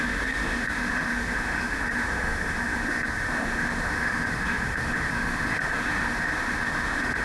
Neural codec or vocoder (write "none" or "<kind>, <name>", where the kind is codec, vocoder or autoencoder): autoencoder, DAC-VAE